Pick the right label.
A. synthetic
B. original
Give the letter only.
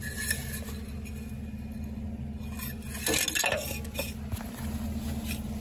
B